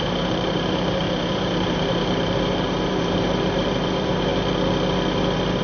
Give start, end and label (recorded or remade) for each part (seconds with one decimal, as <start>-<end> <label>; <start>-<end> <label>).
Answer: 0.0-4.3 remade; 4.3-5.6 recorded